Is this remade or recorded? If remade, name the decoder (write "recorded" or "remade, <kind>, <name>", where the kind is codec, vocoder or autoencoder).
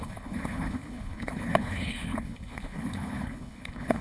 remade, codec, HILCodec